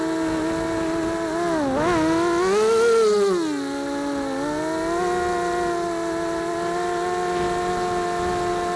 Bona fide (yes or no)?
yes